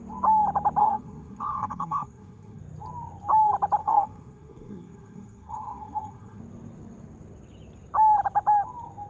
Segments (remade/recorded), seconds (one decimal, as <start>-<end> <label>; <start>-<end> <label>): 0.0-0.8 recorded; 0.8-2.6 remade; 2.6-3.8 recorded; 3.8-6.4 remade; 6.4-9.1 recorded